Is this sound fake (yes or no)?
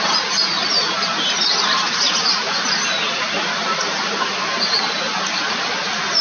no